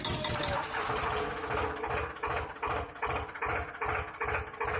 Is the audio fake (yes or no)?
no